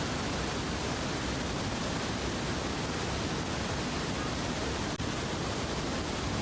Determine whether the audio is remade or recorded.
recorded